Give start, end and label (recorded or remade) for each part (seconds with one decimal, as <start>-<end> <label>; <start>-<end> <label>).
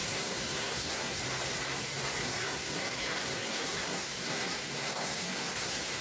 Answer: 0.0-1.2 remade; 1.2-2.2 recorded; 2.2-6.0 remade